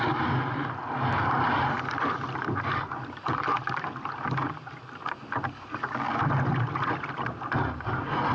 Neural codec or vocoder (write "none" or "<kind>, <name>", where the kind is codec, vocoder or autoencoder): none